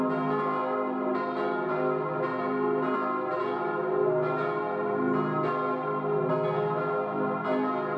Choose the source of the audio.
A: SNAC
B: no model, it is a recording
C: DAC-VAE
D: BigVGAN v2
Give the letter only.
B